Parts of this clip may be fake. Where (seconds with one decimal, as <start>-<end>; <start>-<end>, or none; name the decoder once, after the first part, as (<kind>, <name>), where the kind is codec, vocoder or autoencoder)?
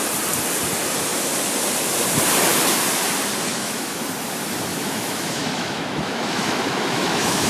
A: 3.5-4.0 (autoencoder, DAC-VAE); 4.7-7.5